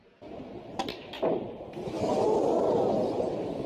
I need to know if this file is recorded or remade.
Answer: recorded